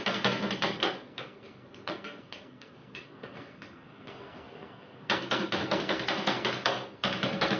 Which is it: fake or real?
fake